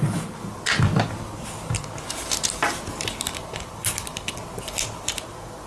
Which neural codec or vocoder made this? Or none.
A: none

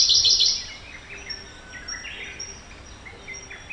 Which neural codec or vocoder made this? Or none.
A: none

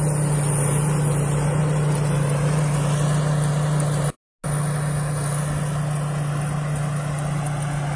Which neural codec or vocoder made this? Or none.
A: none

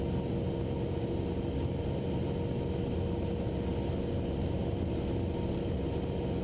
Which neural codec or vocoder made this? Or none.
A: none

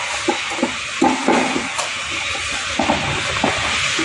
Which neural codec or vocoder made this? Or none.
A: none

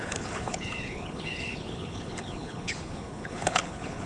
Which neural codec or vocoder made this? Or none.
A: codec, HILCodec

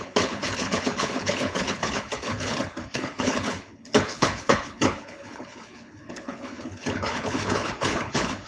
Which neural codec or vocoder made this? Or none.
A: codec, HILCodec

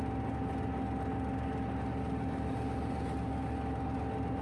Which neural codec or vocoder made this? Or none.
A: none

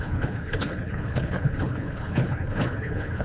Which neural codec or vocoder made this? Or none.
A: codec, HILCodec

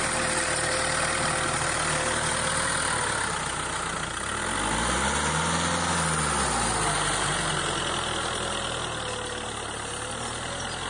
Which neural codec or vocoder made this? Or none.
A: none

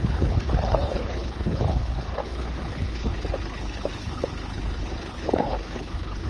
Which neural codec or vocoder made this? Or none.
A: codec, HILCodec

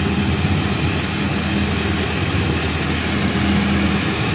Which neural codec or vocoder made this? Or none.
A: none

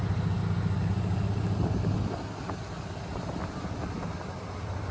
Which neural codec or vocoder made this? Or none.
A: none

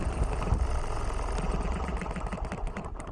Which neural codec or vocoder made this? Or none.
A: none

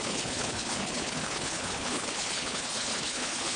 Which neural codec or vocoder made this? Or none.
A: codec, HILCodec